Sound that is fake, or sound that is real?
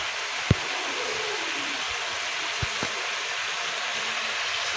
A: real